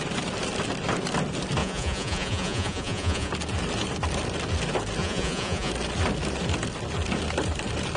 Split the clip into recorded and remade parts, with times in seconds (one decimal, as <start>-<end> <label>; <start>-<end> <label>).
0.0-1.6 recorded; 1.6-3.3 remade; 3.3-5.0 recorded; 5.0-5.7 remade; 5.7-8.0 recorded